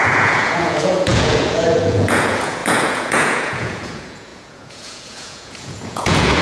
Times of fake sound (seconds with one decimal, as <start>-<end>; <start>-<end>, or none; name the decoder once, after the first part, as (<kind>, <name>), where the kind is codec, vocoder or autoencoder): 0.0-6.4 (vocoder, Vocos)